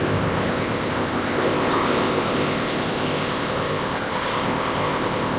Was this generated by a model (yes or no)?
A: yes